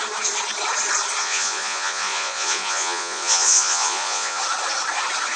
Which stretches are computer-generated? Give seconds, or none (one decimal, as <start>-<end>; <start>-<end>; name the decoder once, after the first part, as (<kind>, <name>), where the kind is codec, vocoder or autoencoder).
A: 1.2-4.4 (vocoder, Vocos)